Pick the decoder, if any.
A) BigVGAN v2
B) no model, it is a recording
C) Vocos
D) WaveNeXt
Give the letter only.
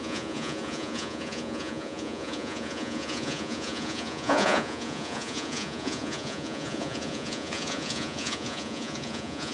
C